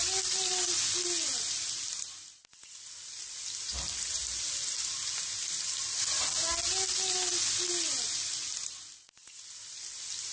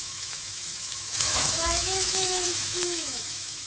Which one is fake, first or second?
second